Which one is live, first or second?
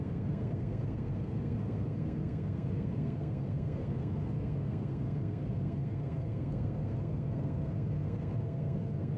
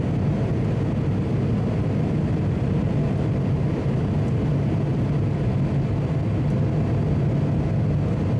second